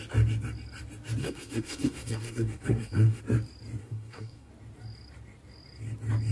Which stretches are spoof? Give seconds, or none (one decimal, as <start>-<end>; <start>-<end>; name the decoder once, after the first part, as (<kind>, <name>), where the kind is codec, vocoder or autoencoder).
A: 1.2-3.2 (codec, SNAC); 3.8-4.5